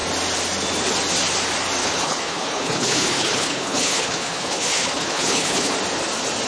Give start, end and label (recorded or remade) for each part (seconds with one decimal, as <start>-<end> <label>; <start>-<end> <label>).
0.0-1.8 recorded; 1.8-5.7 remade; 5.7-6.5 recorded